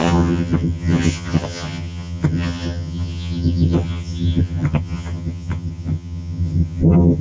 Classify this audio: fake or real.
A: fake